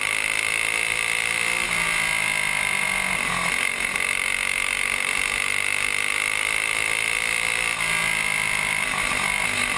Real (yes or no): yes